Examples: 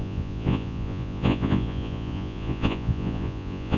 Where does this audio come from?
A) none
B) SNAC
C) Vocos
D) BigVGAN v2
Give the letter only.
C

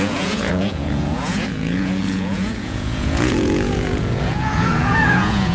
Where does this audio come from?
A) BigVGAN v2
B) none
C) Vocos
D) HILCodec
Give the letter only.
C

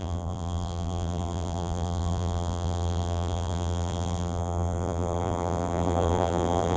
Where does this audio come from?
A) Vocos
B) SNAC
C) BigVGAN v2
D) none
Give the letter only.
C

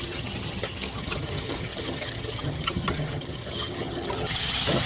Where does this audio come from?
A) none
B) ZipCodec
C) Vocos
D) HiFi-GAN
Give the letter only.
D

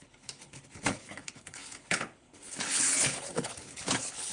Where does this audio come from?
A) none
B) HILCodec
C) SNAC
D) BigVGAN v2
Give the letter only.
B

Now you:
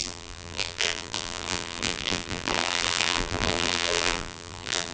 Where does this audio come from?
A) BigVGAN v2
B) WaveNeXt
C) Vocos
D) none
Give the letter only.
A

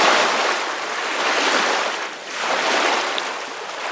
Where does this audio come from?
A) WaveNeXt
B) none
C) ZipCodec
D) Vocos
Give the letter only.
B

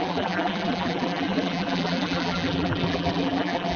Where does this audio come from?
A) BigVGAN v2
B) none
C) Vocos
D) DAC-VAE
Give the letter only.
A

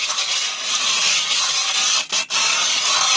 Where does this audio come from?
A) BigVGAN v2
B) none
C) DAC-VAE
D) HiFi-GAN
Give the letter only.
B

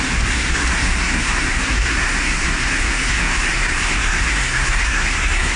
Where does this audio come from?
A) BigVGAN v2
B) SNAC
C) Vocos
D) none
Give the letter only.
B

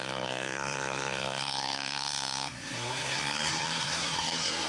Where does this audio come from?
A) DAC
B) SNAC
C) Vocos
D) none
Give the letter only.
B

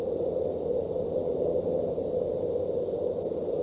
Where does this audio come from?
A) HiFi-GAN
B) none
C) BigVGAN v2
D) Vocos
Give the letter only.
C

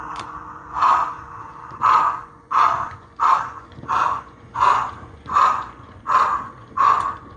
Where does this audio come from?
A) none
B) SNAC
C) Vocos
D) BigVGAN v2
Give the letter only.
C